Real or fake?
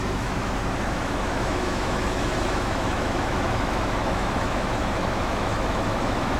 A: fake